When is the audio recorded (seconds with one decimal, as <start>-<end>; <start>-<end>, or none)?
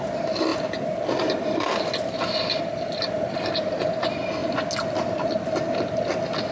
0.0-6.5